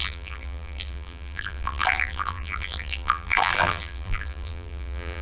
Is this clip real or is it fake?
fake